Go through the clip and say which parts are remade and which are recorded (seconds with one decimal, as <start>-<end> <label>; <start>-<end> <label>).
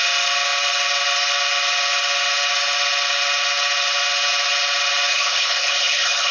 0.0-5.1 recorded; 5.1-6.3 remade